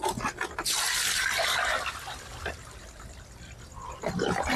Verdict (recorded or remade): recorded